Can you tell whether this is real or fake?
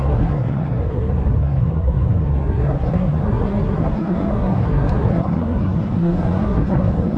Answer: fake